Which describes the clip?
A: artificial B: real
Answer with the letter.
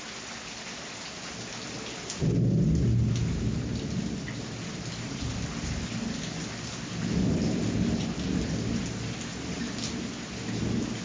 B